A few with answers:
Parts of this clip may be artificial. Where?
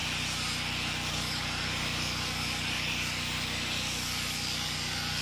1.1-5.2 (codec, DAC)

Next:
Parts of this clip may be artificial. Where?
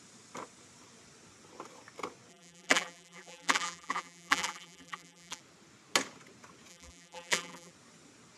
2.3-5.4 (vocoder, BigVGAN v2); 6.7-7.7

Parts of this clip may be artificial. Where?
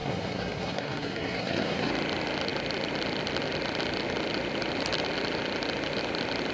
0.0-1.9 (codec, SNAC)